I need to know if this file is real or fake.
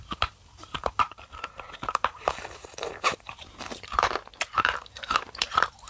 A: fake